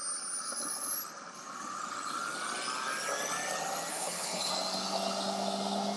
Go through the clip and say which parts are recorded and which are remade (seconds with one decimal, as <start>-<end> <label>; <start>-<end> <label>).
0.0-3.9 recorded; 3.9-4.5 remade; 4.5-6.0 recorded